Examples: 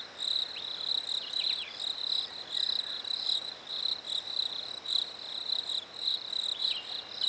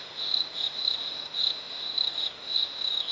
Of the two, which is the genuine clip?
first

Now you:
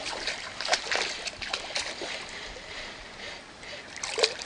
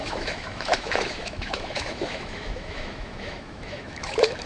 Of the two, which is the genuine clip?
first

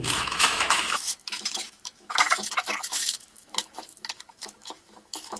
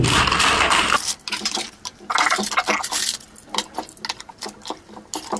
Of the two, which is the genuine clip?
second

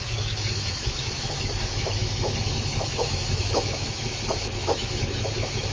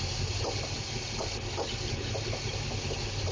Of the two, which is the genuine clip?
second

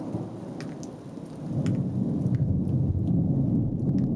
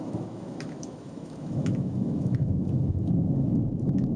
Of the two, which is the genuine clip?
first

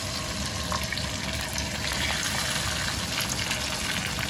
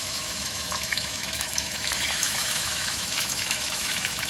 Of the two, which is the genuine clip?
first